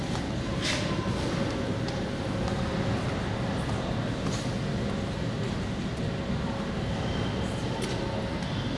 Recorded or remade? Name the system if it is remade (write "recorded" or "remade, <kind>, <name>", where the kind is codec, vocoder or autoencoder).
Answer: recorded